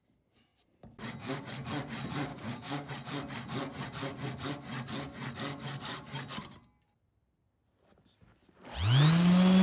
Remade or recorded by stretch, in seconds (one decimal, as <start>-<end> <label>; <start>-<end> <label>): 0.0-2.3 recorded; 2.3-2.9 remade; 2.9-9.6 recorded